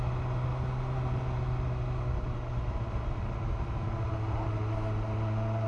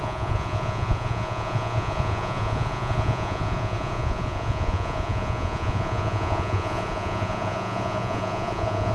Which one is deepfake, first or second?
second